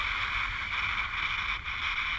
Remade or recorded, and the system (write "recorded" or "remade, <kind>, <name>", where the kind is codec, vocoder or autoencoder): recorded